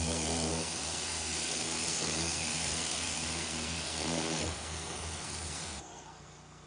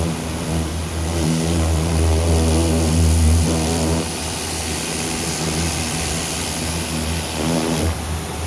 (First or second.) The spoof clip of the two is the first